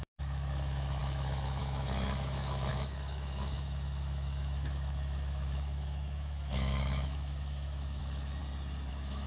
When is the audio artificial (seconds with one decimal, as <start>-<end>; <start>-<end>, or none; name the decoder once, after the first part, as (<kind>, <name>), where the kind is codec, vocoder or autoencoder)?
0.0-8.4 (autoencoder, DAC-VAE); 8.9-9.3